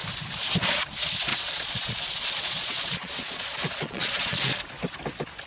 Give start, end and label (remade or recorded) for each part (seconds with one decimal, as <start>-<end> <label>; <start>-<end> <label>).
0.0-1.3 recorded; 1.3-4.6 remade; 4.6-5.5 recorded